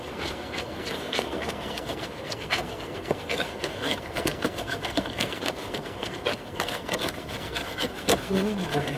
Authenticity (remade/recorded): remade